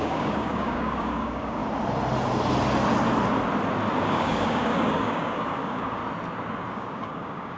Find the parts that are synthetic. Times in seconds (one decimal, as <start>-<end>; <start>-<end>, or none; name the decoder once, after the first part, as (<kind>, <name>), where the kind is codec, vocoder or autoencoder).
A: 0.0-1.6 (codec, DAC); 4.0-6.0; 6.7-7.6